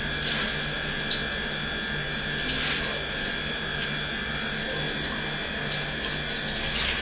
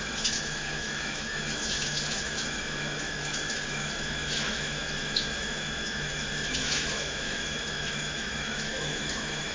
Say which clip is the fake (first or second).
second